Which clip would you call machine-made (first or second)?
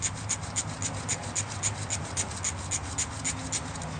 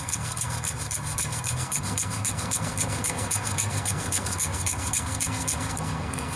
second